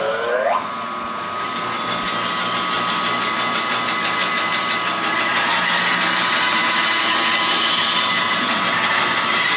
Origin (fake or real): real